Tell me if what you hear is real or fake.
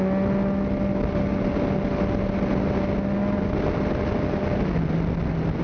real